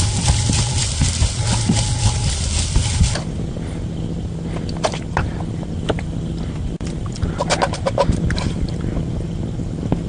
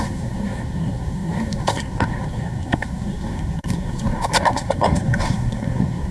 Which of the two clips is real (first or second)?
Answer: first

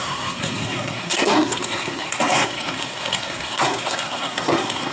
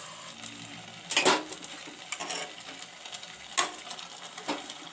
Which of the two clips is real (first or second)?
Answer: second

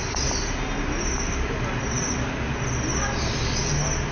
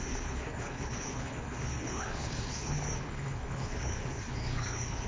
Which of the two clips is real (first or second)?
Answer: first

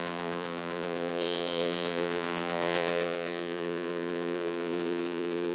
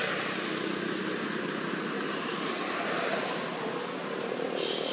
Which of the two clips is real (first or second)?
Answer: second